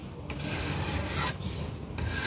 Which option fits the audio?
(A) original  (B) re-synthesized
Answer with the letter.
A